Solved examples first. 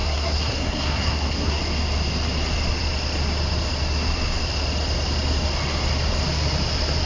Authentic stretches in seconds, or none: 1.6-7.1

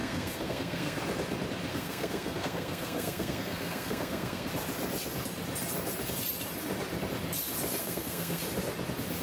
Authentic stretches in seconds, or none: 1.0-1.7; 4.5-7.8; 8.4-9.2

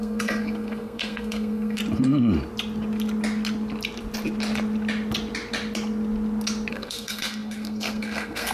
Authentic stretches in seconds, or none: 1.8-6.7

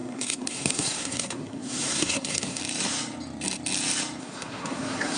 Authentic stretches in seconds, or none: 2.6-4.2

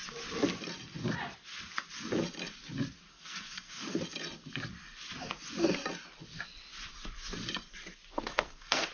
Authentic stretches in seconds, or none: 0.0-3.1; 4.0-8.1

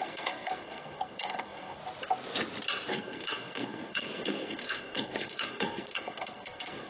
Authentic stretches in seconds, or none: 1.8-2.9